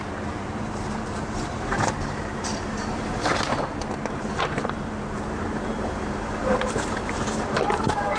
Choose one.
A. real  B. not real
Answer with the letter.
B